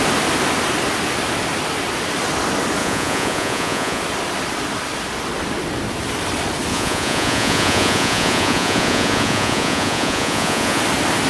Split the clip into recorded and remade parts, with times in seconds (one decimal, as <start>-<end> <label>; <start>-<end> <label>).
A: 0.0-2.8 recorded; 2.8-4.0 remade; 4.0-6.7 recorded; 6.7-10.8 remade; 10.8-11.3 recorded